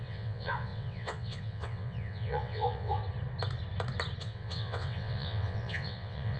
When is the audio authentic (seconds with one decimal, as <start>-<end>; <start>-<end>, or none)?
3.0-4.2

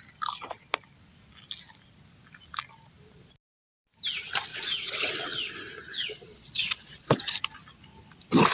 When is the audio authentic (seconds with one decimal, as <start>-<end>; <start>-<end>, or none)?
0.0-4.5; 5.5-5.9; 7.3-8.5

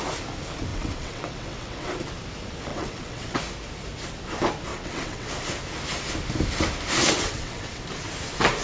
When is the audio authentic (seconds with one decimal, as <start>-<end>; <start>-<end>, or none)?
0.0-0.7; 1.9-2.7; 3.4-4.7; 5.3-7.0; 7.8-8.6

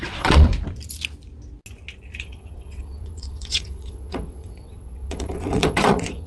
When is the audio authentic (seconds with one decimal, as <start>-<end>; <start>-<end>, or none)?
0.5-2.2

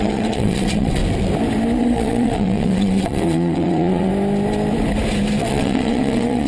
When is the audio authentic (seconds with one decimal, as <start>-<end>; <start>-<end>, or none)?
1.0-1.8; 4.1-5.4

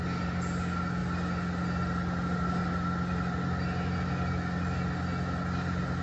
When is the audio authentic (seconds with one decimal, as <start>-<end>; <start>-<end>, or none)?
0.0-6.0

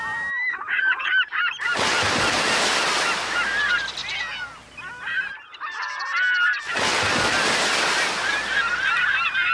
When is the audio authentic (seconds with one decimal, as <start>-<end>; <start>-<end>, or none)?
0.0-0.5; 1.1-9.5

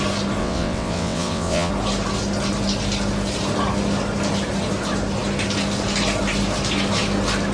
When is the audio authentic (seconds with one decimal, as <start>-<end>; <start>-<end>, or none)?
0.0-0.4; 1.7-7.5